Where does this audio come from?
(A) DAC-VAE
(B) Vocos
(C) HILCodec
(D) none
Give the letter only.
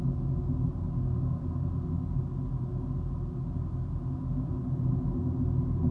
D